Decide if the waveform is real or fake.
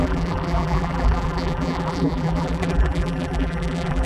fake